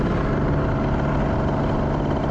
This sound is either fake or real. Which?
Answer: real